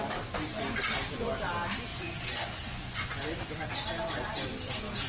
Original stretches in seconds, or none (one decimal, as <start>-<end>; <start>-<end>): 0.0-1.9; 3.4-5.1